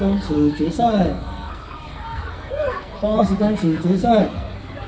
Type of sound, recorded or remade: remade